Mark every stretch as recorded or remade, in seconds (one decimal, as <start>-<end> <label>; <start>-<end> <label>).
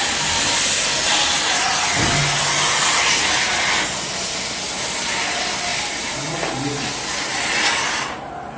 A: 0.0-8.6 recorded